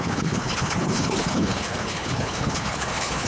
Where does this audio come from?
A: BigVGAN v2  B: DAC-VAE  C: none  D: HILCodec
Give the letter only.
D